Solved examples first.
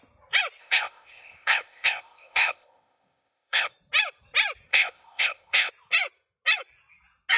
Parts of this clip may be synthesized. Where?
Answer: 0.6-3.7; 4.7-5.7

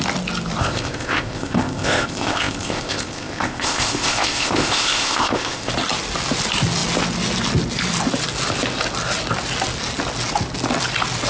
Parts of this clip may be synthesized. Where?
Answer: 0.6-5.7

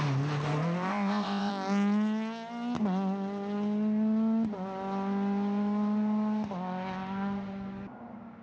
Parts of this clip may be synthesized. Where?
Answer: 0.9-1.5

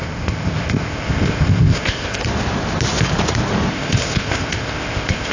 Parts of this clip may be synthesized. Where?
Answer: 0.0-2.2; 3.7-5.3

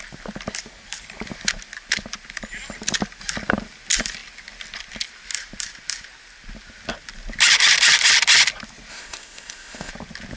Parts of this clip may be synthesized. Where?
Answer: 8.9-9.9

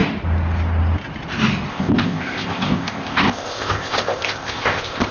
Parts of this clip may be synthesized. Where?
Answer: 1.7-5.1